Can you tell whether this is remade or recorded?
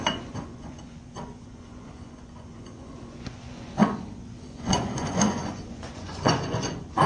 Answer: remade